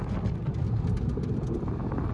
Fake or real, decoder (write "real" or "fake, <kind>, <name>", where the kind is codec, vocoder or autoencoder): real